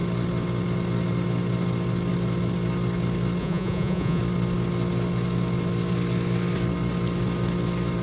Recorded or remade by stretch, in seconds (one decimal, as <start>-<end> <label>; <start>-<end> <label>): 0.0-3.4 recorded; 3.4-4.2 remade; 4.2-8.0 recorded